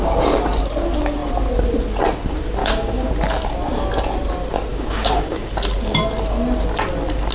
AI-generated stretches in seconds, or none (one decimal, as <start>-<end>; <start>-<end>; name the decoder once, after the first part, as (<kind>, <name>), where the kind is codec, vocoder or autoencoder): 2.6-3.1 (codec, DAC); 4.7-5.5